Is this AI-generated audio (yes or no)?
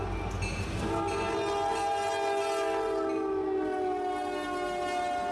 no